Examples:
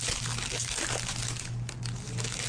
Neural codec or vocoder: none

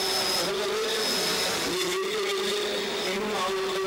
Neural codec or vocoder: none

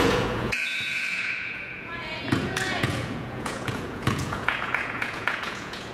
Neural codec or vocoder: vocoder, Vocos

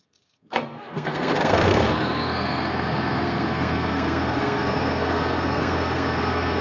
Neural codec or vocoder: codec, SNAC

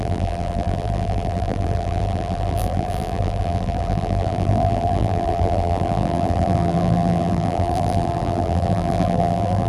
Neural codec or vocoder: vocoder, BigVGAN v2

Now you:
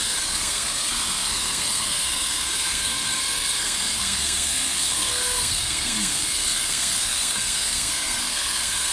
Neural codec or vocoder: codec, SNAC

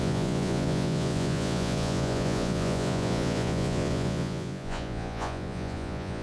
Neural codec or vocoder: vocoder, Vocos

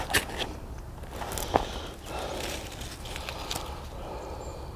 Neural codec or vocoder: none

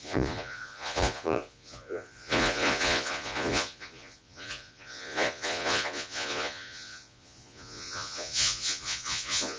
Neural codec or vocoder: vocoder, Vocos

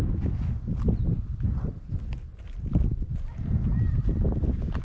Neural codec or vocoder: none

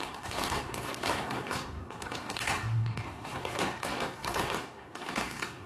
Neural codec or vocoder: codec, SNAC